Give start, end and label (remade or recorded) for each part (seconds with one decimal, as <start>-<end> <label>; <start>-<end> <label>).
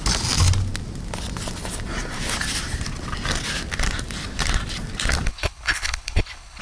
0.0-5.3 recorded; 5.3-6.6 remade